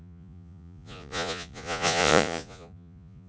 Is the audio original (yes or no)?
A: no